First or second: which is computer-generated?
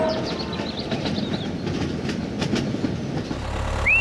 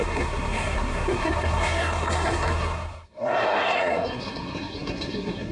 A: second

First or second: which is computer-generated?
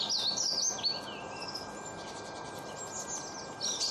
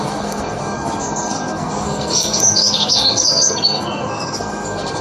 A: second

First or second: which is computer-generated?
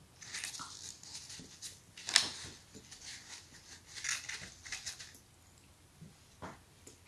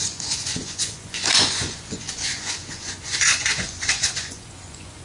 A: second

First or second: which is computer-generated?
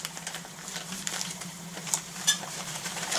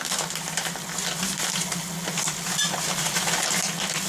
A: first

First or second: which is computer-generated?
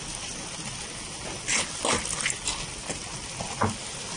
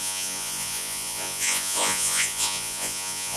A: second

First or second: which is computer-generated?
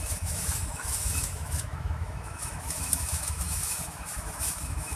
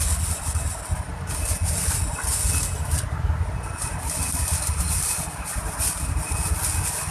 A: first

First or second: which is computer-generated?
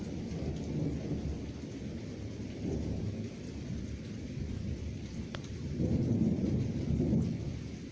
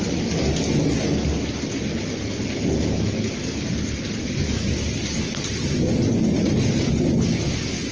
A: first